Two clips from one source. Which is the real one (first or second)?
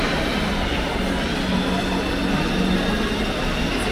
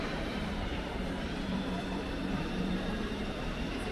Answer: first